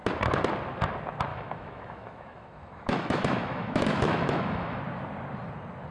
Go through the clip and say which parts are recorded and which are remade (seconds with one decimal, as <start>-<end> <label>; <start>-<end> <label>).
0.0-1.3 recorded; 1.3-4.8 remade; 4.8-5.9 recorded